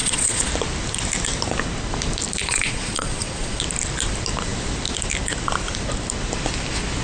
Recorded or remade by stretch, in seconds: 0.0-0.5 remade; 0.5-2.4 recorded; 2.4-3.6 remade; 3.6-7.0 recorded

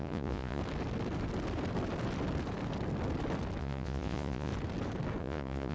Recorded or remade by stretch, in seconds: 0.0-0.6 remade; 0.6-3.6 recorded; 3.6-4.5 remade; 4.5-5.2 recorded; 5.2-5.7 remade